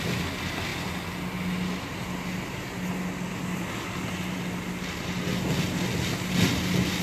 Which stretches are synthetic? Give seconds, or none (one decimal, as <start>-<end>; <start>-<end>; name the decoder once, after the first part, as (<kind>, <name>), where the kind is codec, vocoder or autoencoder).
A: none